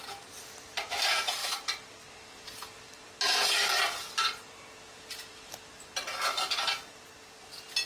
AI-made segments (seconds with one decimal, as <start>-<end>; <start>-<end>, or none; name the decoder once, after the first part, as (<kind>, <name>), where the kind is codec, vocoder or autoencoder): none